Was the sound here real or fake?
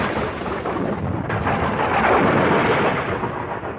real